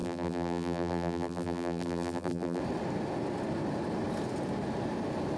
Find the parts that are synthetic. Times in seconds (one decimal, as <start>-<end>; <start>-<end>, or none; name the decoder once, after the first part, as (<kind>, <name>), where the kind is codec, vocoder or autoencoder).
0.0-2.6 (vocoder, BigVGAN v2)